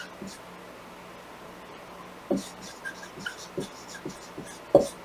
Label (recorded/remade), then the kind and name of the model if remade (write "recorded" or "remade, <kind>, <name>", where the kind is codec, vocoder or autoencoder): recorded